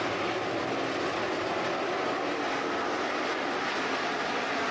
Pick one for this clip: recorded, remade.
recorded